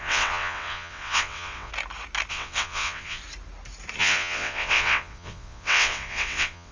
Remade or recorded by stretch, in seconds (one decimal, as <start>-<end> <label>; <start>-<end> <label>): 0.0-1.7 remade; 1.7-2.3 recorded; 2.3-3.2 remade; 3.2-4.0 recorded; 4.0-6.7 remade

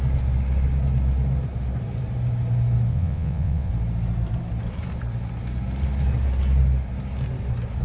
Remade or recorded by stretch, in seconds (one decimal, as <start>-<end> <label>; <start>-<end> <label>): 0.0-2.9 recorded; 2.9-3.7 remade; 3.7-7.8 recorded

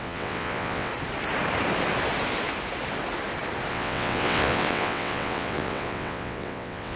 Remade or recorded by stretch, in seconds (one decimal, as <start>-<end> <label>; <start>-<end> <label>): 0.0-0.9 remade; 0.9-3.7 recorded; 3.7-7.0 remade

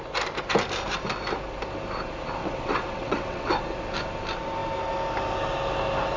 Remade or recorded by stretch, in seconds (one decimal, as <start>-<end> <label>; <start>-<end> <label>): 0.0-2.4 recorded; 2.4-3.5 remade; 3.5-6.2 recorded

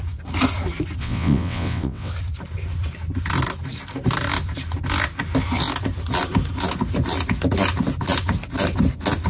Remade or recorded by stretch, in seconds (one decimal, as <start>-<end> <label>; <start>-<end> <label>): 0.0-1.0 recorded; 1.0-2.1 remade; 2.1-9.3 recorded

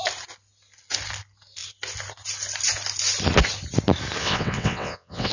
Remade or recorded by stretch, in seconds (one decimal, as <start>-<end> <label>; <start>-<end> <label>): 0.0-4.2 recorded; 4.2-5.3 remade

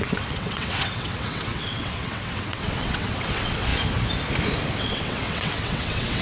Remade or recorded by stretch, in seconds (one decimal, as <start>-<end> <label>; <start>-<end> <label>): 0.0-3.7 remade; 3.7-4.8 recorded; 4.8-6.2 remade

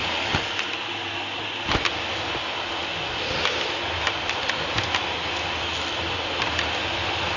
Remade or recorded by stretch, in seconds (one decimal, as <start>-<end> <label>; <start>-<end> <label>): 0.0-7.4 recorded